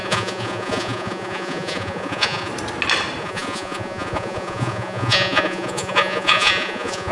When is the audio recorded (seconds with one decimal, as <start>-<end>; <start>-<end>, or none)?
2.5-3.2